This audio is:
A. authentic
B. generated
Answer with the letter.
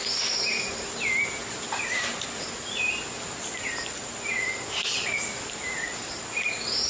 A